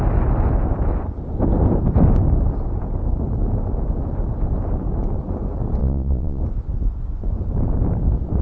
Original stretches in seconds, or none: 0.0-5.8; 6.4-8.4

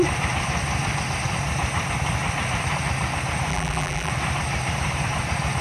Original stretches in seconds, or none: 0.0-3.5; 4.1-5.6

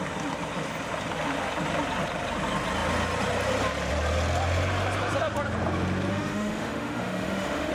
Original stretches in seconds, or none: 0.0-6.1